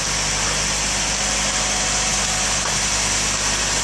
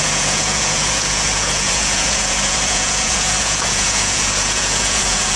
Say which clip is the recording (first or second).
first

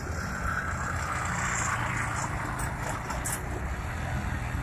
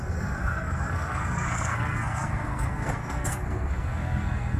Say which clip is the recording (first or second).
first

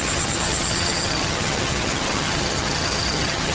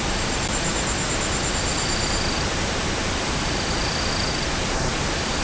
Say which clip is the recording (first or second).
second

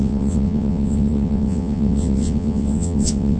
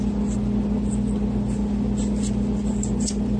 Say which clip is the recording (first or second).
second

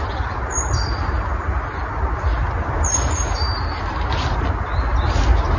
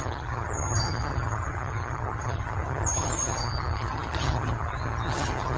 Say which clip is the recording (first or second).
first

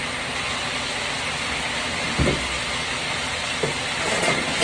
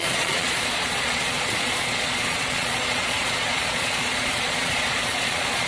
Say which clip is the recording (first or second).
first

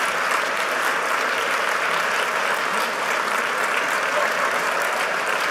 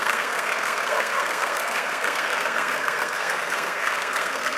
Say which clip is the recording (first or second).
first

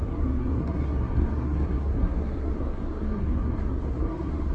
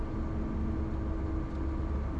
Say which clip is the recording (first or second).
second